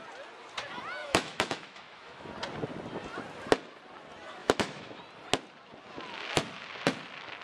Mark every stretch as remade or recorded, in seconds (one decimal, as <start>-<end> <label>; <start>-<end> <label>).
0.0-1.0 recorded; 1.0-2.3 remade; 2.3-4.4 recorded; 4.4-5.0 remade; 5.0-7.4 recorded